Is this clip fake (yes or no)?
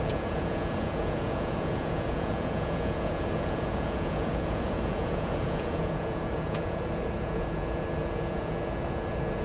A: yes